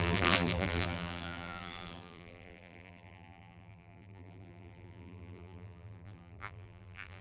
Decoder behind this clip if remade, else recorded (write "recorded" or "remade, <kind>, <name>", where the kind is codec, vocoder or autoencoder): remade, vocoder, BigVGAN v2